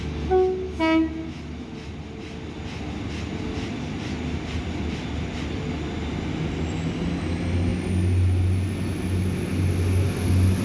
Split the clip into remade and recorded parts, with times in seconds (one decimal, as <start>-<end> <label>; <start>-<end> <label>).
0.0-10.6 recorded